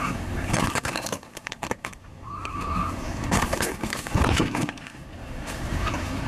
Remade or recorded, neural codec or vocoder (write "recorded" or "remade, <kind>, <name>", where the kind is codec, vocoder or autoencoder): remade, codec, SNAC